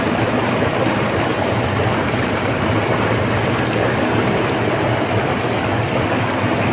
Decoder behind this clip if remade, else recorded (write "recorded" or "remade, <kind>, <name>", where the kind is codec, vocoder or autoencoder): recorded